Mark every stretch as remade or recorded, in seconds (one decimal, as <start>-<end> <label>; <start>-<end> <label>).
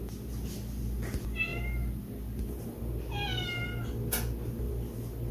0.0-5.3 recorded